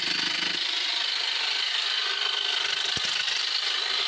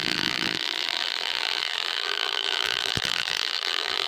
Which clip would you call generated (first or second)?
second